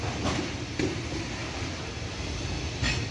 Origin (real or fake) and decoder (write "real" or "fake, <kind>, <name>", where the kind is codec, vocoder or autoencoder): real